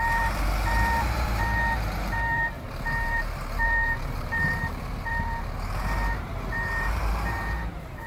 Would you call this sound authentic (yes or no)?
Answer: no